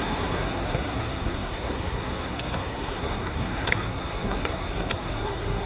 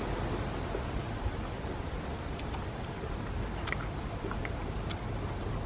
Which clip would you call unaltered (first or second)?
second